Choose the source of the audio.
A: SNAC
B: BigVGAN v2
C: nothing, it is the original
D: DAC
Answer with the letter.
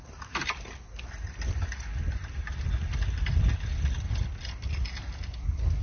C